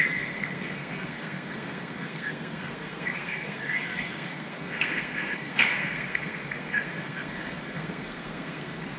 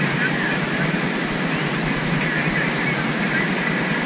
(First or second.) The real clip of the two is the second